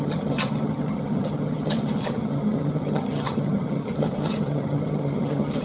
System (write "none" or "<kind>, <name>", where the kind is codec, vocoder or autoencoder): vocoder, HiFi-GAN